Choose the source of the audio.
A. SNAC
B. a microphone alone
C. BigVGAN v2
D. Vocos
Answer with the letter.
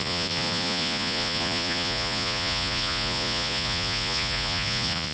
D